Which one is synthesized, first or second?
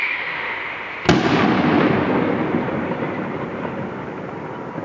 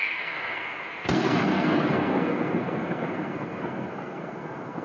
second